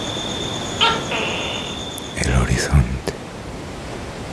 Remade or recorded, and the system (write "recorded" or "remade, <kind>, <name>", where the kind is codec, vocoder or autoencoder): recorded